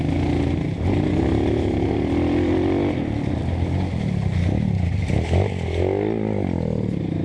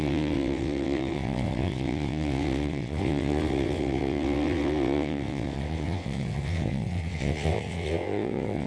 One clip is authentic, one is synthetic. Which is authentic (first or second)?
first